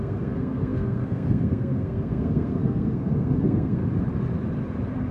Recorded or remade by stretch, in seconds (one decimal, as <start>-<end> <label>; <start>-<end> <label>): 0.0-3.8 remade; 3.8-5.1 recorded